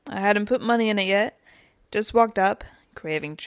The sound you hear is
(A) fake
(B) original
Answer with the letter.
B